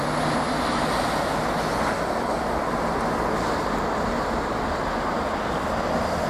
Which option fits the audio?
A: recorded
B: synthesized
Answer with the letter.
A